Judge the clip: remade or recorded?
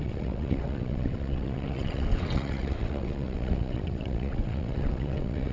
remade